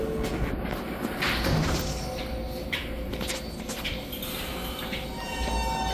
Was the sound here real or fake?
real